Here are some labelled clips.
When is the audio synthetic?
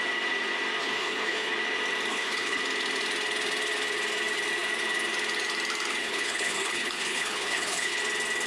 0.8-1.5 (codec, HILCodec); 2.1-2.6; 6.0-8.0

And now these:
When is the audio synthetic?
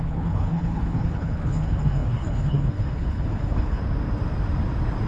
0.0-3.8 (codec, HILCodec)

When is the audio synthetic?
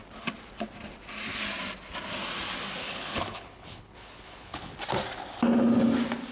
2.8-4.7 (codec, HILCodec)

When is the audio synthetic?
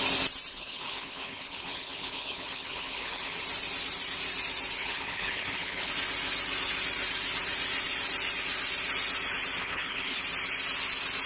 0.5-3.4 (codec, HILCodec); 4.8-5.9; 9.6-10.2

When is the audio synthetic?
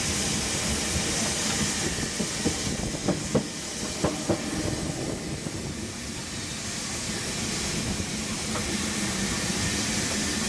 none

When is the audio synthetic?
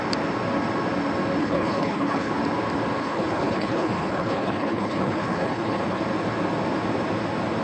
1.4-2.3 (codec, HILCodec); 3.0-6.0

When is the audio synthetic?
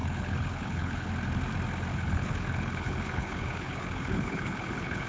0.0-1.1 (codec, HILCodec); 1.9-5.1